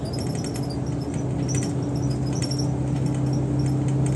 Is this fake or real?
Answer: real